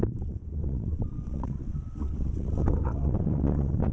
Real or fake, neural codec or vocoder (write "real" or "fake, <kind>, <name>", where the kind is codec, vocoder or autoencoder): fake, vocoder, WaveNeXt